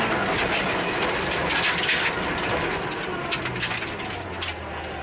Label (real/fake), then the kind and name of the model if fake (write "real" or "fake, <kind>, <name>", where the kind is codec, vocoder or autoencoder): real